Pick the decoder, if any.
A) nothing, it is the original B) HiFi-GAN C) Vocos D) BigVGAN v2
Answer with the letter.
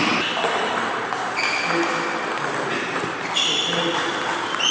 A